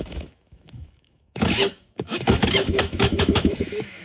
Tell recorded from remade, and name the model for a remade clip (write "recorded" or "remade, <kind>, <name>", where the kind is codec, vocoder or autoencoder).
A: remade, autoencoder, DAC-VAE